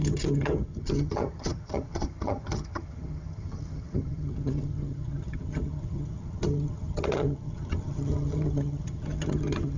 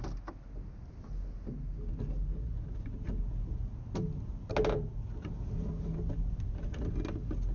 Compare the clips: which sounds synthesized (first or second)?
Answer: first